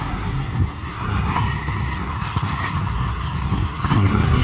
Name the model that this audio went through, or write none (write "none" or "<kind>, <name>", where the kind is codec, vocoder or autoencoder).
codec, SNAC